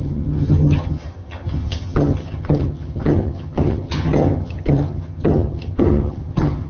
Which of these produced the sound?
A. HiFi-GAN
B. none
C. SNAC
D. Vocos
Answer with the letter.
A